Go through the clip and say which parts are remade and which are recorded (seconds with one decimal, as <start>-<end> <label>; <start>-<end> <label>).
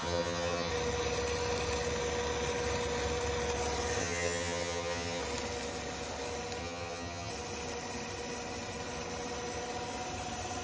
0.0-0.7 remade; 0.7-4.0 recorded; 4.0-5.2 remade; 5.2-6.6 recorded; 6.6-7.3 remade; 7.3-10.6 recorded